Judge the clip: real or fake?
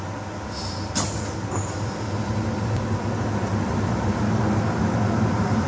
real